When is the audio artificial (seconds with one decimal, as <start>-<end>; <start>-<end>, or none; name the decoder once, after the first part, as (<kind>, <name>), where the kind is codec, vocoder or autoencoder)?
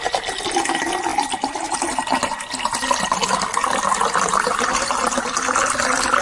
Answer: none